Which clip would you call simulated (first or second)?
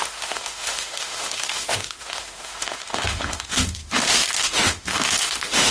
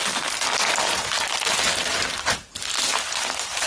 first